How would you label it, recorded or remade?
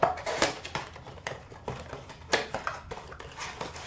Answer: remade